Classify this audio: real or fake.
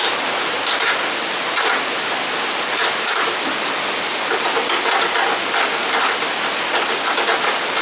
real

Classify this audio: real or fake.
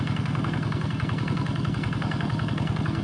fake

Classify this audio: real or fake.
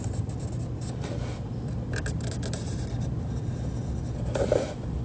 real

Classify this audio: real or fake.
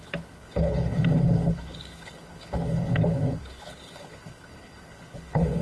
fake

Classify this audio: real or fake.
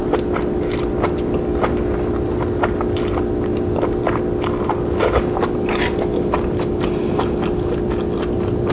real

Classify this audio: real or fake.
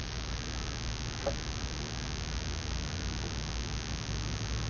real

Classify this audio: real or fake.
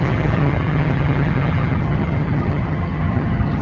fake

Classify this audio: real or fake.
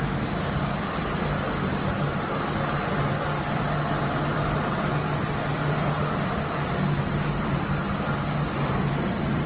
real